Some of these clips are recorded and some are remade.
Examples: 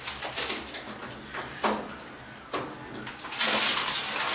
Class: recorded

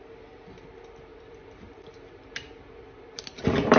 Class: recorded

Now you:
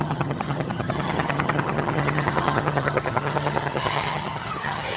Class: remade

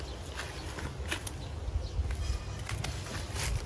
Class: recorded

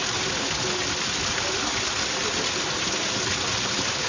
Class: recorded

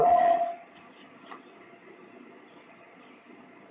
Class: remade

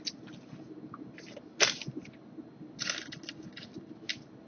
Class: recorded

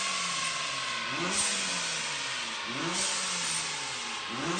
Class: recorded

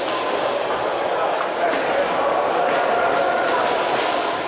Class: recorded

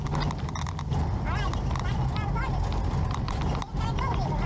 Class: recorded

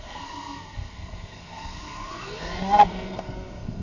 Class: remade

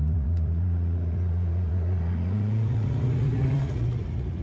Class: remade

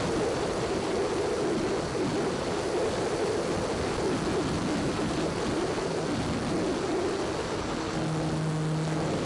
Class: recorded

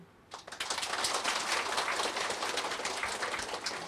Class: recorded